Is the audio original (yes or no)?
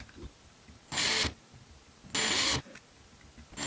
yes